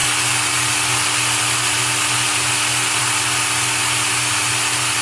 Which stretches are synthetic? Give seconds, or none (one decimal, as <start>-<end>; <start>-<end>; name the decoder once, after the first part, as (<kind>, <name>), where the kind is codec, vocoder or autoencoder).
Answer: none